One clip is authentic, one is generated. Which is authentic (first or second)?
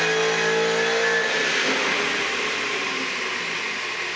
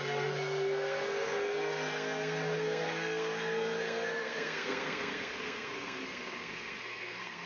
first